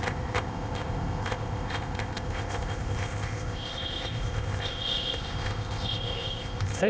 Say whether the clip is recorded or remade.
remade